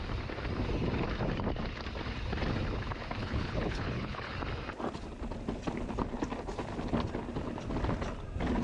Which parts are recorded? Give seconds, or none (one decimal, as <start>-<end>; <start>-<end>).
0.0-3.2; 4.3-8.6